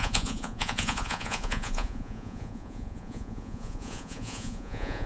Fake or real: fake